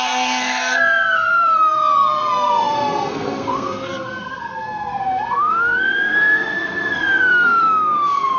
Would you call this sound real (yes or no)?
no